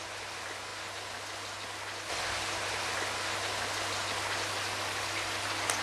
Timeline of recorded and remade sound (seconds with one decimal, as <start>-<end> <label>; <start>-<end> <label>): 0.0-5.8 recorded